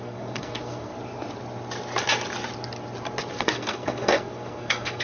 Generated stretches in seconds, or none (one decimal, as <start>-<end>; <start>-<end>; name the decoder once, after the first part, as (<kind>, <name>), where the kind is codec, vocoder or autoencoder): 0.0-0.9 (codec, SNAC); 3.3-5.0